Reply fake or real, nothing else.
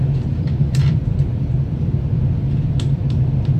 fake